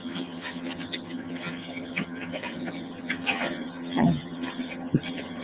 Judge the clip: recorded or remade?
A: remade